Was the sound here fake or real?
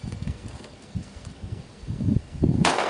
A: fake